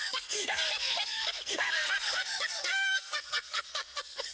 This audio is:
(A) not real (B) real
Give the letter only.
A